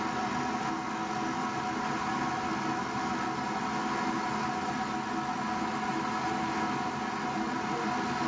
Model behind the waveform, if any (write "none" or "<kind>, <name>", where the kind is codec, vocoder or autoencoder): none